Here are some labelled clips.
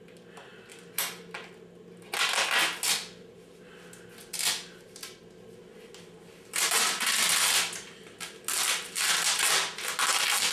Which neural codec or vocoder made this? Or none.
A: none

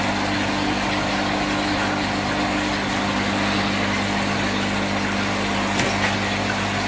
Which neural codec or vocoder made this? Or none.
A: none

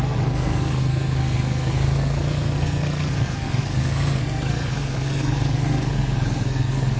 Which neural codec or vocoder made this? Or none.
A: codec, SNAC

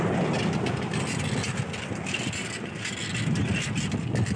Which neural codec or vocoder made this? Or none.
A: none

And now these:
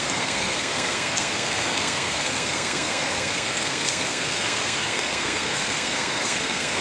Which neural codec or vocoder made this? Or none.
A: codec, SNAC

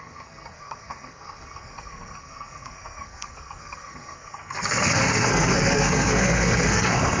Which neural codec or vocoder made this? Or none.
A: codec, SNAC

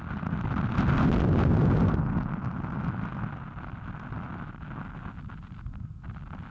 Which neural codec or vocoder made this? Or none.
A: none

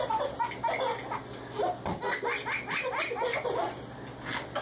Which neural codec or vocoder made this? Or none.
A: none